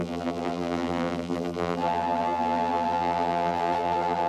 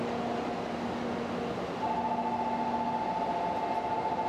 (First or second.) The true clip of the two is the second